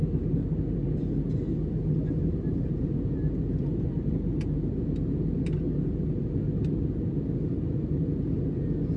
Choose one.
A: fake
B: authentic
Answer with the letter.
B